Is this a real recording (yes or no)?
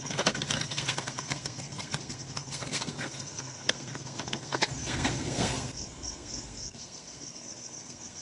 no